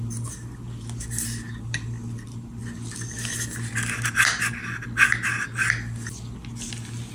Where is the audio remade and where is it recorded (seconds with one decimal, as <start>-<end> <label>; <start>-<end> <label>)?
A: 0.0-7.1 recorded

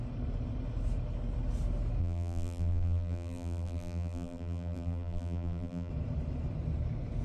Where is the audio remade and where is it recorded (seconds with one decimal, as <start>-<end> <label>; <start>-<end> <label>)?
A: 0.0-2.0 recorded; 2.0-5.9 remade; 5.9-7.2 recorded

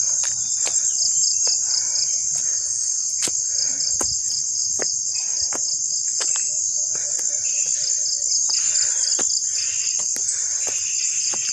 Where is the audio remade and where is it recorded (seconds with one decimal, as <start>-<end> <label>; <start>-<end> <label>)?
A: 0.0-2.2 remade; 2.2-3.3 recorded; 3.3-4.6 remade; 4.6-8.3 recorded; 8.3-9.1 remade; 9.1-10.5 recorded; 10.5-11.5 remade

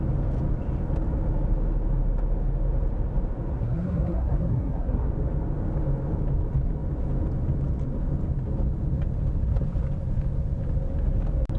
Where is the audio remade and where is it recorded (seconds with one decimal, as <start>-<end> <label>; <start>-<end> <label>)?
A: 0.0-3.5 recorded; 3.5-5.1 remade; 5.1-11.6 recorded

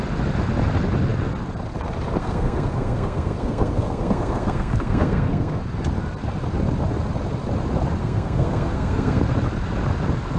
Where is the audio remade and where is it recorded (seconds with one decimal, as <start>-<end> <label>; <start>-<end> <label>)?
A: 0.0-2.2 recorded; 2.2-5.6 remade; 5.6-8.0 recorded; 8.0-9.2 remade; 9.2-10.4 recorded